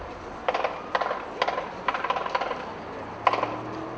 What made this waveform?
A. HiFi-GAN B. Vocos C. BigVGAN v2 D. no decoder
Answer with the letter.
D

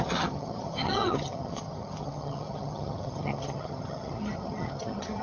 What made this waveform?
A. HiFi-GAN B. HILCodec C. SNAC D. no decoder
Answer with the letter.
A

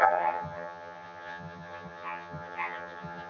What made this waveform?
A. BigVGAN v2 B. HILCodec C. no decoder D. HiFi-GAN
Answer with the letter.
D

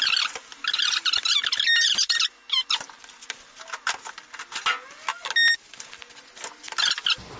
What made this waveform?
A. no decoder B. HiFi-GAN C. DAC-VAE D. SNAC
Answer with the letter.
A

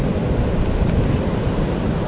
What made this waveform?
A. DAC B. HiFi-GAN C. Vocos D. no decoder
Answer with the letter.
D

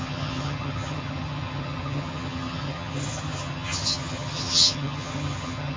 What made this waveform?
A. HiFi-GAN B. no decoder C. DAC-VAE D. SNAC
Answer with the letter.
A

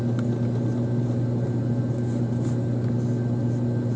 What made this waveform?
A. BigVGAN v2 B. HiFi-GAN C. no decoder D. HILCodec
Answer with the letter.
C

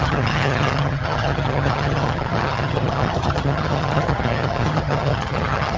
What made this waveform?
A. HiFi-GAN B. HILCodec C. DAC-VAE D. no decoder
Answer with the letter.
A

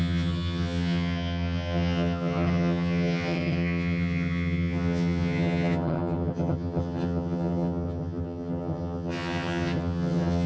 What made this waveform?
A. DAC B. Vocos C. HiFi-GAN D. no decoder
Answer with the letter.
C